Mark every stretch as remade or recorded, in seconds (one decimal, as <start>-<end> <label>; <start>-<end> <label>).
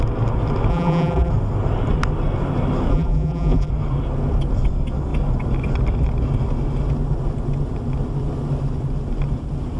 0.0-0.7 recorded; 0.7-1.3 remade; 1.3-2.9 recorded; 2.9-3.7 remade; 3.7-9.8 recorded